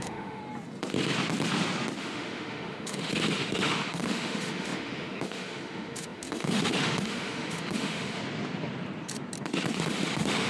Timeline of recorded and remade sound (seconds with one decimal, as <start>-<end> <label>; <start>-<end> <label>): 0.0-0.4 remade; 0.4-2.0 recorded; 2.0-8.2 remade; 8.2-9.8 recorded; 9.8-10.5 remade